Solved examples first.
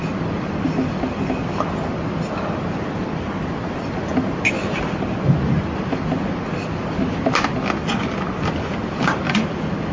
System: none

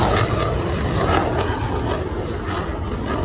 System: none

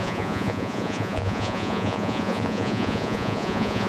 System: vocoder, Vocos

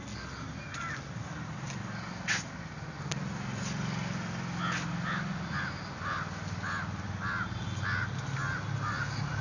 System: none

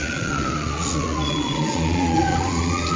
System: vocoder, Vocos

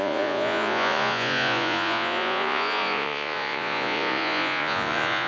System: vocoder, Vocos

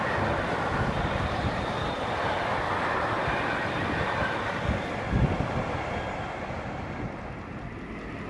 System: none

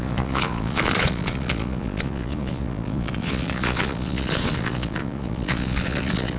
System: vocoder, Vocos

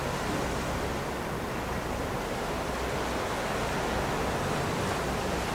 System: none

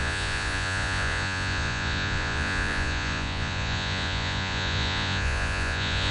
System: vocoder, Vocos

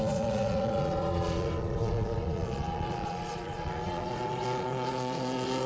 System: vocoder, Vocos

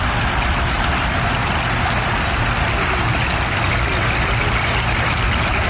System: none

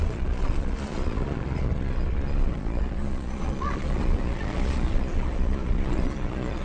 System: vocoder, Vocos